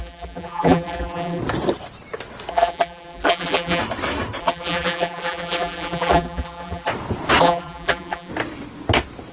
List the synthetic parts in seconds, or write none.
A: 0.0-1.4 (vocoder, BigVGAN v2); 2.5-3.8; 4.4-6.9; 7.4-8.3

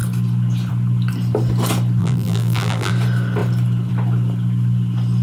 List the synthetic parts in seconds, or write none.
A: 2.0-2.9 (vocoder, BigVGAN v2)